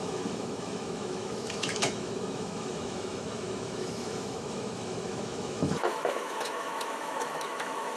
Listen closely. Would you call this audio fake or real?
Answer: fake